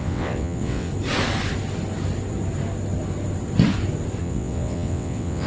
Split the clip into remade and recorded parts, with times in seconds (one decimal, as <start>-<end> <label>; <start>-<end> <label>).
0.0-0.9 remade; 0.9-4.2 recorded; 4.2-5.5 remade